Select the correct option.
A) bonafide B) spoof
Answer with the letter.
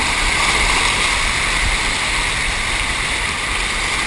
A